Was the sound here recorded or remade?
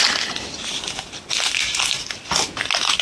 recorded